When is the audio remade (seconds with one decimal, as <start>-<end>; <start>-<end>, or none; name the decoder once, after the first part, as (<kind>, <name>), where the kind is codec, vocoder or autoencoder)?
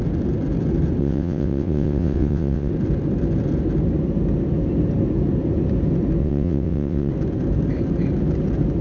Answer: 1.0-2.7 (vocoder, WaveNeXt); 6.2-7.1